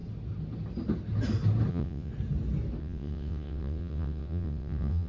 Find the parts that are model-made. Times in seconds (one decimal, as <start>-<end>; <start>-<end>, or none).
1.7-2.1; 2.8-5.1